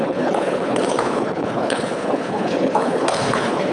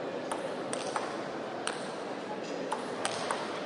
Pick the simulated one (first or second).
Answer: first